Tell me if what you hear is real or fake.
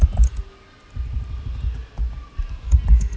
real